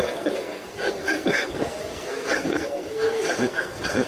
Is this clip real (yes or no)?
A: no